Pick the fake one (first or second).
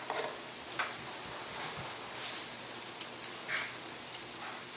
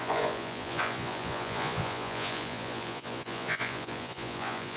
second